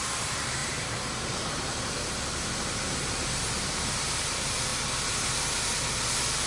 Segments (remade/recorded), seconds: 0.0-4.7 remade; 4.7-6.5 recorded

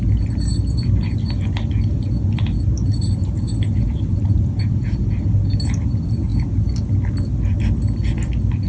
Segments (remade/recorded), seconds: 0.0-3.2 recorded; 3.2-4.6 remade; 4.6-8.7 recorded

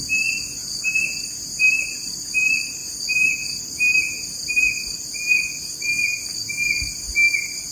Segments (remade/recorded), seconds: 0.0-0.6 recorded; 0.6-2.1 remade; 2.1-2.8 recorded; 2.8-4.5 remade; 4.5-7.7 recorded

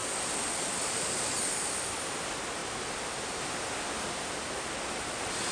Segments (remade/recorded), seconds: 0.0-5.5 recorded